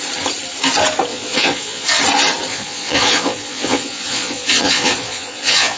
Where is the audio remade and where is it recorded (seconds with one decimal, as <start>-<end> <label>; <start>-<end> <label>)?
0.0-1.1 recorded; 1.1-2.0 remade; 2.0-2.5 recorded; 2.5-5.8 remade